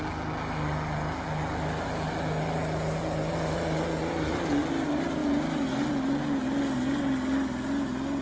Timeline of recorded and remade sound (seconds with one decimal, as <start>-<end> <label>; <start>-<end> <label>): 0.0-8.2 recorded